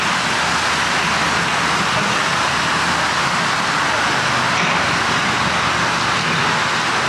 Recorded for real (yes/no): yes